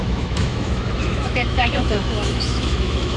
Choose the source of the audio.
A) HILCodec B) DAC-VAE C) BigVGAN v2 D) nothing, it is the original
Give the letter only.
B